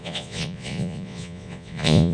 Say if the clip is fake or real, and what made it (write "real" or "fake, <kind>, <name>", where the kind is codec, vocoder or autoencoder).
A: fake, vocoder, Vocos